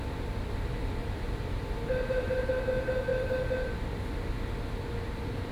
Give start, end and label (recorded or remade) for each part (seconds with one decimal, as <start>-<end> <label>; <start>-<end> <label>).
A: 0.0-1.0 recorded; 1.0-2.5 remade; 2.5-5.5 recorded